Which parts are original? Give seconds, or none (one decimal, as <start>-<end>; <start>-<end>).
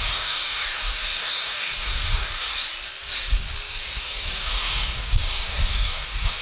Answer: 2.5-3.7